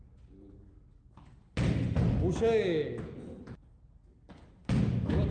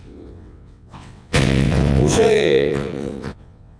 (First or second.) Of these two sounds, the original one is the first